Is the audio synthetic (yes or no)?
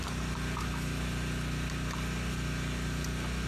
no